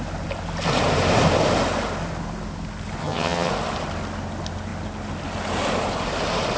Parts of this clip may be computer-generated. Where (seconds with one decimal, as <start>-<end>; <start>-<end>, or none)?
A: 3.0-3.5